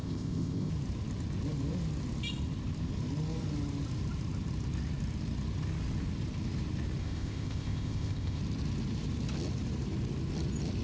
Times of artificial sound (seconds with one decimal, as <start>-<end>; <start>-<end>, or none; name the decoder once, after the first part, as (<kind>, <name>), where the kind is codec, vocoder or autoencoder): 0.0-0.7 (codec, ZipCodec); 7.0-8.4